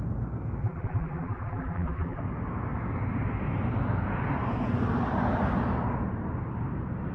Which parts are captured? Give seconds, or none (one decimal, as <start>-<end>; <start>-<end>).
0.0-0.6; 2.2-7.1